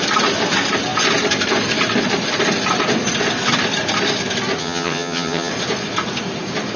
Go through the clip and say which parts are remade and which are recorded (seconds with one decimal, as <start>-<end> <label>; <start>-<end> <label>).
0.0-4.6 recorded; 4.6-5.5 remade; 5.5-6.8 recorded